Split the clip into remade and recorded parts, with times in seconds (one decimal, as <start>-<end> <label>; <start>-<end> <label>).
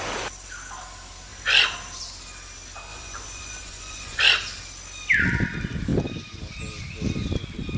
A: 0.0-2.9 recorded; 2.9-4.2 remade; 4.2-7.8 recorded